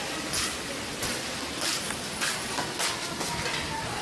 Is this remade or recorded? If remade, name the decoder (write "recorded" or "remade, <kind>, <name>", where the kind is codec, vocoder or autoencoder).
recorded